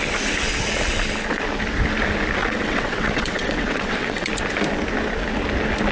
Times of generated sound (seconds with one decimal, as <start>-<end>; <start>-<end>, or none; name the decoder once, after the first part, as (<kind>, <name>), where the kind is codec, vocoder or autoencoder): 2.4-4.3 (vocoder, WaveNeXt)